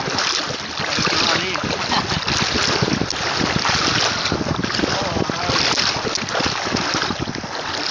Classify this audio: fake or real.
real